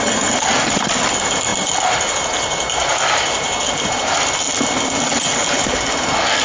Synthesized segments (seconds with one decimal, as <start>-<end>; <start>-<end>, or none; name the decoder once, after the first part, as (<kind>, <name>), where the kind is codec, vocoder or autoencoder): none